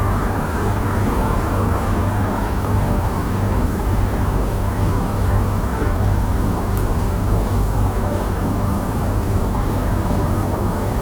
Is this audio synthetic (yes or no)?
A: yes